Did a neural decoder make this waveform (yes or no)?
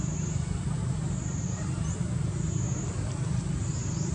no